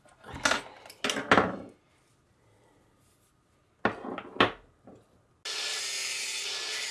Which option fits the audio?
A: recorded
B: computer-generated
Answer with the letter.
A